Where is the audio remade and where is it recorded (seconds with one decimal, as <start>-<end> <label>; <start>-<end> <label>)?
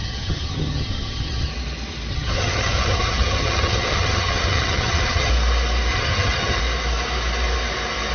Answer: 0.0-1.5 remade; 1.5-2.1 recorded; 2.1-5.3 remade; 5.3-5.9 recorded; 5.9-6.6 remade; 6.6-8.1 recorded